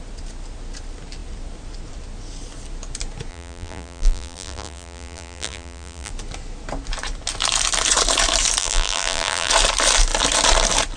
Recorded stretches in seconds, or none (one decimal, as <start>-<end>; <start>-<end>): 0.0-3.3; 6.1-8.6; 9.5-11.0